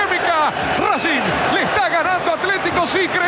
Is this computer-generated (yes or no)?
no